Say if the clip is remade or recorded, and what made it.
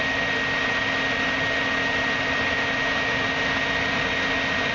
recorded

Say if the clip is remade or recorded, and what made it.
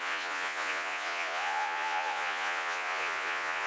remade, vocoder, Vocos